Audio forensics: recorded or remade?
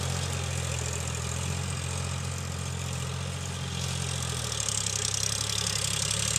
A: recorded